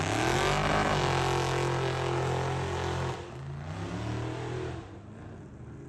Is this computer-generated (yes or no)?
no